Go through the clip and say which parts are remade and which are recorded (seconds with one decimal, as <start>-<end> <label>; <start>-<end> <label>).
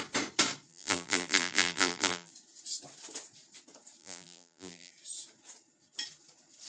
0.0-0.7 recorded; 0.7-2.3 remade; 2.3-4.0 recorded; 4.0-4.9 remade; 4.9-6.7 recorded